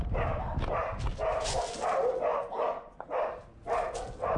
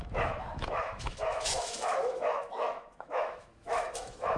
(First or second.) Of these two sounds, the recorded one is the first